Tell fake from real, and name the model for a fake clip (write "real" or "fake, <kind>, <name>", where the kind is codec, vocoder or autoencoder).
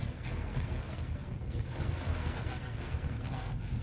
fake, codec, SNAC